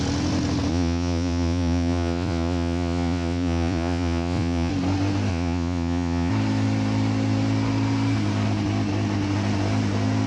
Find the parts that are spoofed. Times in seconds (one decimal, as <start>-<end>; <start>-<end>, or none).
0.7-4.7; 5.3-6.3